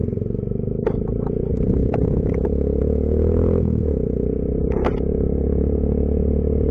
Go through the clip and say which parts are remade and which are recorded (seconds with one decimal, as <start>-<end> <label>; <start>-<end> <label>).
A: 0.0-6.7 recorded